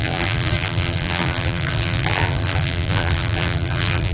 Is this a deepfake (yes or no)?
yes